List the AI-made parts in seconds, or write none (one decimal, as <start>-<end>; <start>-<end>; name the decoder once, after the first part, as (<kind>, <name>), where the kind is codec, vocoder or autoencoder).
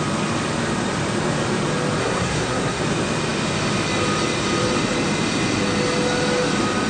2.0-2.8 (codec, SNAC)